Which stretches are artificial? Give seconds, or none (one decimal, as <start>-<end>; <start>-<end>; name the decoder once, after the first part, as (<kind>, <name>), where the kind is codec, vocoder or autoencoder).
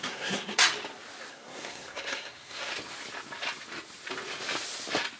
0.0-0.6 (codec, SNAC); 1.3-2.7